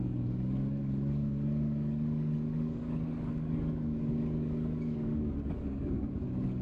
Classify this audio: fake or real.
fake